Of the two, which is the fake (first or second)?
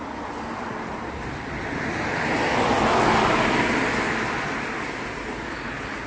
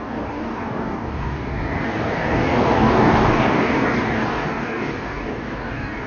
second